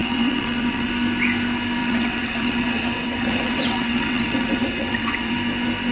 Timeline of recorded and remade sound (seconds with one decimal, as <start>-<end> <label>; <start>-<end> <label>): 0.0-0.9 remade; 0.9-1.8 recorded; 1.8-5.3 remade; 5.3-5.9 recorded

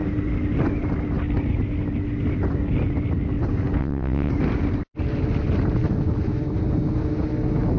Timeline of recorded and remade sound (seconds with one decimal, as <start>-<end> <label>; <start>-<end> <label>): 0.0-3.8 recorded; 3.8-4.3 remade; 4.3-7.8 recorded

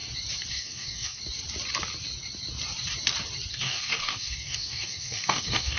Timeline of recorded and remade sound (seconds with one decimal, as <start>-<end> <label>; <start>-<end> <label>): 0.0-0.5 recorded; 0.5-1.2 remade; 1.2-3.5 recorded; 3.5-5.8 remade

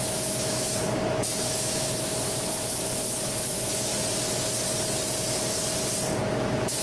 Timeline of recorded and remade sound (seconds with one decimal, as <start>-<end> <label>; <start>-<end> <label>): 0.0-3.9 remade; 3.9-6.2 recorded; 6.2-6.8 remade